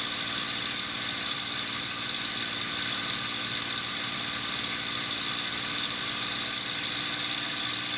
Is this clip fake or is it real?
real